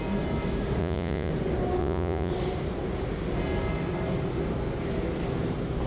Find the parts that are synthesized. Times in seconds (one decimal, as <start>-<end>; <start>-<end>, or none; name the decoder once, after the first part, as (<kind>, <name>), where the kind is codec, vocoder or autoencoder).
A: 0.8-1.3 (vocoder, Vocos); 1.8-2.3